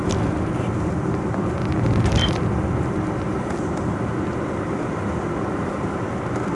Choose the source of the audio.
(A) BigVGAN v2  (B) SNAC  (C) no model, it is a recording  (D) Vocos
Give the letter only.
C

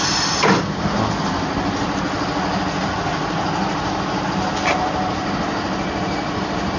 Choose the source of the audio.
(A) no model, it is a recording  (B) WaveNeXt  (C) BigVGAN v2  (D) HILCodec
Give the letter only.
A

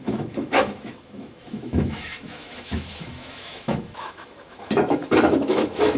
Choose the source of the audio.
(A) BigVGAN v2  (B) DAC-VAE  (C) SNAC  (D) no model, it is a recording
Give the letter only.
B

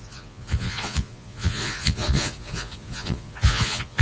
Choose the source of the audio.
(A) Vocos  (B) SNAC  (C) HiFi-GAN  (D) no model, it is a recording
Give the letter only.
A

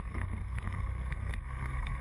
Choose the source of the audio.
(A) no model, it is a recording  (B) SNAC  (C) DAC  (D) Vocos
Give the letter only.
B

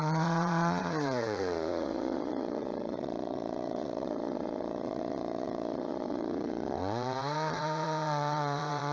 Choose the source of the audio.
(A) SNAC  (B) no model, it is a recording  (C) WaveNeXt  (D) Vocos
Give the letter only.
D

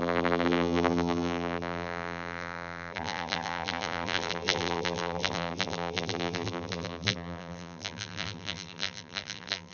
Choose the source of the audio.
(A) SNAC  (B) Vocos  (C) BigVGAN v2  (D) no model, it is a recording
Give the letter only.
C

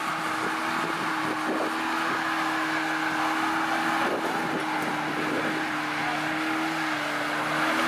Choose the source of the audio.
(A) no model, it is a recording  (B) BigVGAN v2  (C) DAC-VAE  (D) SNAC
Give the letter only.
A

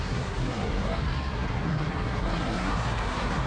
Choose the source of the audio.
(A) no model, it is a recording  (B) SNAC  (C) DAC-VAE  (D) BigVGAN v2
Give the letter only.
B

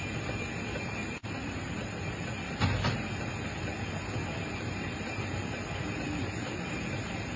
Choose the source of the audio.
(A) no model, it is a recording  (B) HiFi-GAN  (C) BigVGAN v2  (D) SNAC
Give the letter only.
A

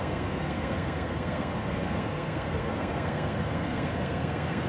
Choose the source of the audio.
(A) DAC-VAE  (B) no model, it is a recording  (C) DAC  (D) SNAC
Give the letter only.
D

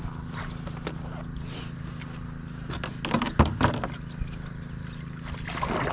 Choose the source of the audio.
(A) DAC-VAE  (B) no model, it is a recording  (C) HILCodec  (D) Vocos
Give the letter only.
B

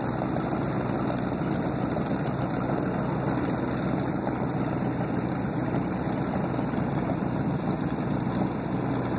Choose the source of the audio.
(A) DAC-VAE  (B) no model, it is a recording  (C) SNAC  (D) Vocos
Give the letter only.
B